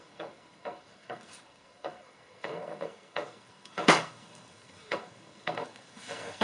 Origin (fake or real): fake